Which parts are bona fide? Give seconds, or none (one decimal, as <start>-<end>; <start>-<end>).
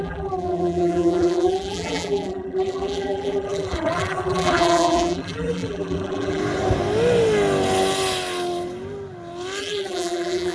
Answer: 6.4-9.6